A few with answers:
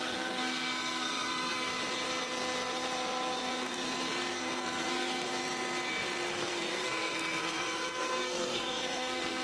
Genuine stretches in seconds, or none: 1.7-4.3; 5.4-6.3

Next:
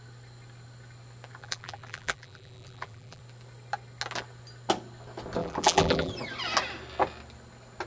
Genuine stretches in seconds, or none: 0.0-1.4; 3.2-5.4; 6.1-7.9

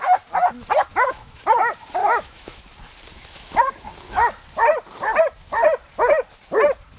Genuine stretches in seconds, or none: 0.0-0.9; 1.5-2.0; 2.6-3.1; 3.9-7.0

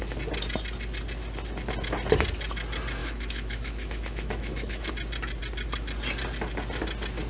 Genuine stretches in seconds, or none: 0.0-3.0; 4.9-7.3

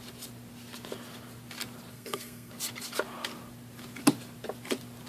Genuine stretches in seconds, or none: 0.0-1.9; 2.5-5.1

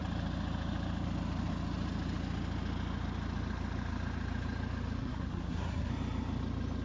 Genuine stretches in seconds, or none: 0.0-5.0; 5.9-6.8

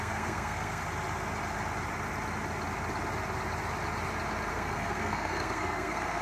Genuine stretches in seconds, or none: 0.8-4.5